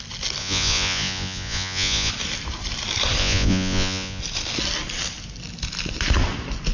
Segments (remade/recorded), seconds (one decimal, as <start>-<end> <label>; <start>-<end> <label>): 0.0-0.4 recorded; 0.4-2.1 remade; 2.1-3.2 recorded; 3.2-4.2 remade; 4.2-6.7 recorded